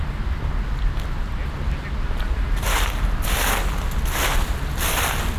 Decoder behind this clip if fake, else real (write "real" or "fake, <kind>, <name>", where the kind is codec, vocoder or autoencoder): real